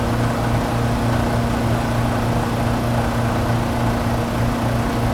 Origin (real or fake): real